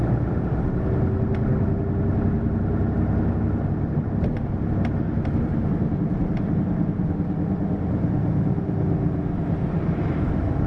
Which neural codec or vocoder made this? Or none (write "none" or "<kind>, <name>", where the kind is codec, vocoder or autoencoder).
none